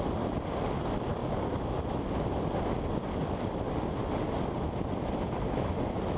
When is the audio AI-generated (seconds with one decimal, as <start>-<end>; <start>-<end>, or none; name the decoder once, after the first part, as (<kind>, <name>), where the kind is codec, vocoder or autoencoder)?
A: 1.2-1.8 (codec, DAC)